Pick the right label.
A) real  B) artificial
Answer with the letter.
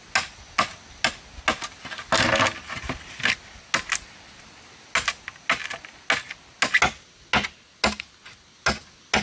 A